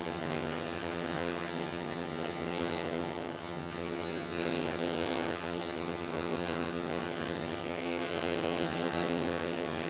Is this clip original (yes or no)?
no